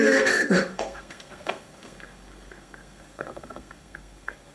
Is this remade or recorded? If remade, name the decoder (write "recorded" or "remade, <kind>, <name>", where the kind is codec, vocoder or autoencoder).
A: remade, codec, SNAC